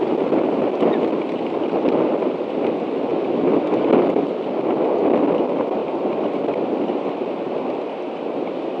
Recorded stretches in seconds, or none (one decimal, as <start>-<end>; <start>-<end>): 0.6-8.8